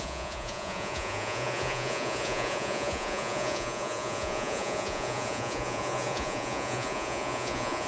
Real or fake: fake